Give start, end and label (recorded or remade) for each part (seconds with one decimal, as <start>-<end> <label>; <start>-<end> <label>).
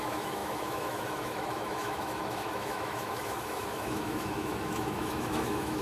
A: 0.0-5.8 remade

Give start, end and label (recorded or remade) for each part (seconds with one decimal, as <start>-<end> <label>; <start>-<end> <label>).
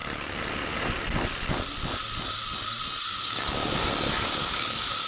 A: 0.0-3.1 recorded; 3.1-3.7 remade; 3.7-4.4 recorded; 4.4-5.1 remade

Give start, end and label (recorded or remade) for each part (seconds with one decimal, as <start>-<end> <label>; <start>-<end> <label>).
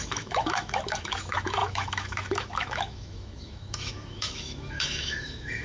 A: 0.0-5.6 remade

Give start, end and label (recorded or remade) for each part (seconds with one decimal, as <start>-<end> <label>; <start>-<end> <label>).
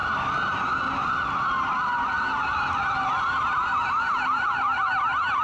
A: 0.0-5.4 recorded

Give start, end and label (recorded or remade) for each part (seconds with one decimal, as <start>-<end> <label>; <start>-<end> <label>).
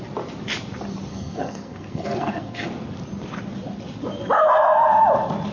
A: 0.0-1.1 recorded; 1.1-2.7 remade; 2.7-5.5 recorded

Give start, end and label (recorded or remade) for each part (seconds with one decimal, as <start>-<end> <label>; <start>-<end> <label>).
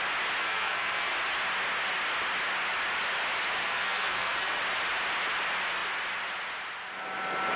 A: 0.0-0.4 recorded; 0.4-1.1 remade; 1.1-3.6 recorded; 3.6-4.6 remade; 4.6-7.6 recorded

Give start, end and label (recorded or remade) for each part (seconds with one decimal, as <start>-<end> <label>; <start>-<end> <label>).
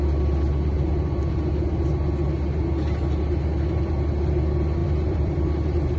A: 0.0-4.8 recorded; 4.8-5.5 remade; 5.5-6.0 recorded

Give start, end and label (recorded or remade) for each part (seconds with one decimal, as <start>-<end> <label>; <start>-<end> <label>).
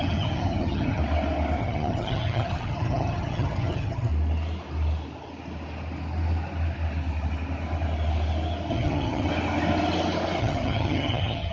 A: 0.0-1.0 remade; 1.0-1.6 recorded; 1.6-4.1 remade; 4.1-8.7 recorded; 8.7-9.3 remade; 9.3-10.4 recorded; 10.4-11.5 remade